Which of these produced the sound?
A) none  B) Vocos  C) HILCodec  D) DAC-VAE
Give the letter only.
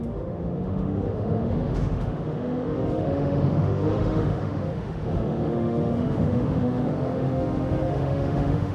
D